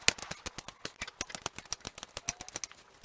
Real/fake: real